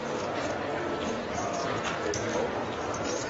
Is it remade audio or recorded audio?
recorded